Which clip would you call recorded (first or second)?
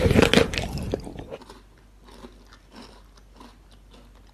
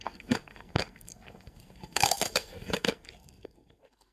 first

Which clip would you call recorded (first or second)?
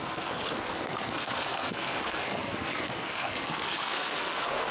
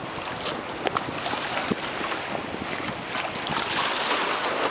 second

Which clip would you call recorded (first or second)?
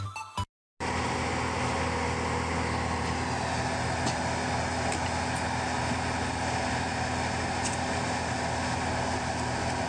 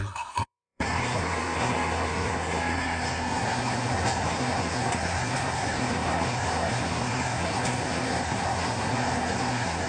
first